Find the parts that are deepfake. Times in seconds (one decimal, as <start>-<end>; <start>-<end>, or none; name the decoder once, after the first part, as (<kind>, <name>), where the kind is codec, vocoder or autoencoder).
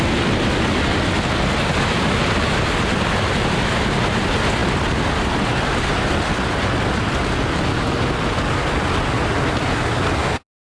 none